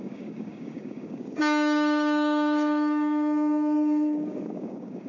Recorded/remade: remade